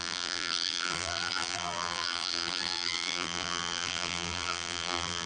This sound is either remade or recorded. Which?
remade